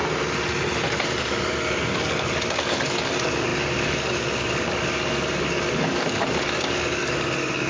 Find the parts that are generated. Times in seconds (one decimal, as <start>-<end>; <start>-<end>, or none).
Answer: 0.9-7.7